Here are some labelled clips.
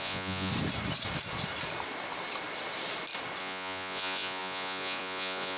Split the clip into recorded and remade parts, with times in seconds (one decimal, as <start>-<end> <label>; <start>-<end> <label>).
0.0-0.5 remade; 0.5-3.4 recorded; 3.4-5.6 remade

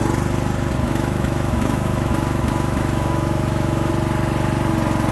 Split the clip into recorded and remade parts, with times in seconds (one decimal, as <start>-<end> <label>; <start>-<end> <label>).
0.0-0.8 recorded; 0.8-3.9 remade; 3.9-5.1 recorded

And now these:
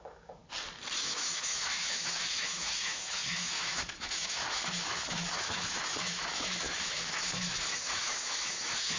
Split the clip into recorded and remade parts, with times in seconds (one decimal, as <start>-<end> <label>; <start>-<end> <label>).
0.0-0.4 remade; 0.4-1.0 recorded; 1.0-9.0 remade

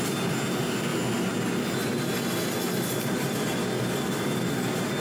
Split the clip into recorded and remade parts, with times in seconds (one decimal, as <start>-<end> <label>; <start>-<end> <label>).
0.0-5.0 recorded